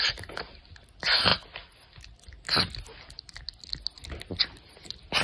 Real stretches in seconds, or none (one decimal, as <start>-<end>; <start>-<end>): 0.0-5.2